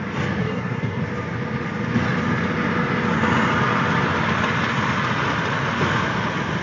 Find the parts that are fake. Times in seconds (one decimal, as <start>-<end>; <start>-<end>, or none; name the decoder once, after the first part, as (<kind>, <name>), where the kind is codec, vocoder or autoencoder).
0.4-1.0 (codec, SNAC)